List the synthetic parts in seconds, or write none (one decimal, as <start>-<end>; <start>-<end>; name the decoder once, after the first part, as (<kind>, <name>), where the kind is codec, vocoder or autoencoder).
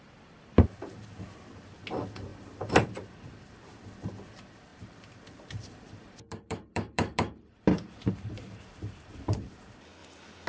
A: 2.3-4.1 (vocoder, BigVGAN v2); 4.7-9.5